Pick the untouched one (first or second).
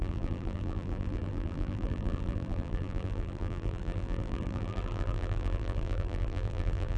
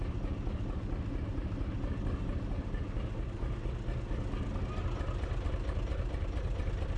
second